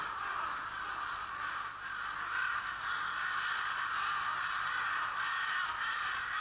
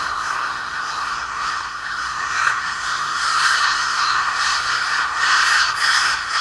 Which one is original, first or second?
first